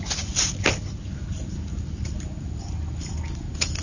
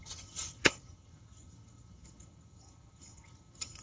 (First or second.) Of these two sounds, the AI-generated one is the second